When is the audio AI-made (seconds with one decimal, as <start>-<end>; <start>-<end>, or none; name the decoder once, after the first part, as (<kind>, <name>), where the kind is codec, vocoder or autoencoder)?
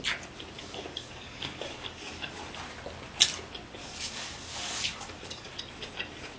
0.6-2.4 (codec, DAC); 3.8-5.5